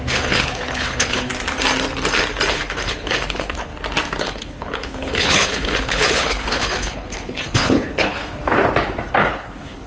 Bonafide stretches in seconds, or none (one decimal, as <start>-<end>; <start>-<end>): 1.3-2.5; 3.7-4.2; 8.4-9.2